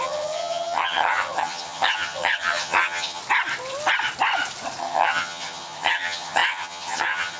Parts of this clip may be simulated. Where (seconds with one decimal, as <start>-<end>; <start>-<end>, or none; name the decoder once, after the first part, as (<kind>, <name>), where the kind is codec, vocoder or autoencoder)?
0.0-3.2 (vocoder, HiFi-GAN); 4.8-7.4